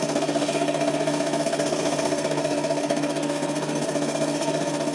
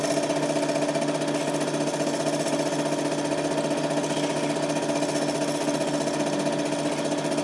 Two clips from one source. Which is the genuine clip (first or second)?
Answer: second